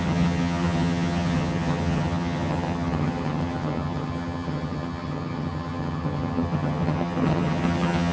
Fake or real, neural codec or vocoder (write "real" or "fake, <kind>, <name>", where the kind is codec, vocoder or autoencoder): fake, vocoder, HiFi-GAN